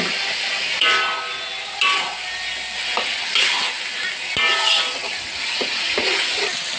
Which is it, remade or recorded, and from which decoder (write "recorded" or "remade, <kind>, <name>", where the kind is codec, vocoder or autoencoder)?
recorded